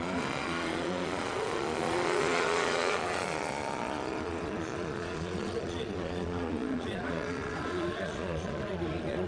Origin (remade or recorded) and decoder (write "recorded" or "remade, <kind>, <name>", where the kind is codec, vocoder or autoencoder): remade, vocoder, Vocos